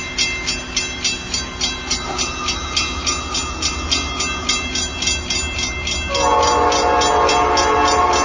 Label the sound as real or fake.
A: real